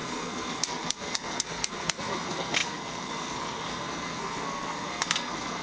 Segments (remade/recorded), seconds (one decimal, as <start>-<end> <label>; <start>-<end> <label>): 0.0-5.6 remade